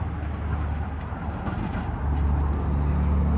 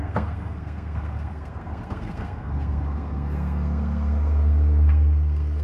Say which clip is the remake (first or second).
second